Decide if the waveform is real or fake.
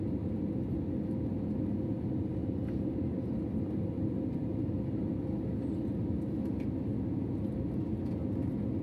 real